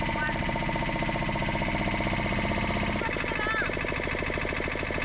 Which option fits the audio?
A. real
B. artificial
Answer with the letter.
A